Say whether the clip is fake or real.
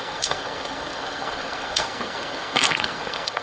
fake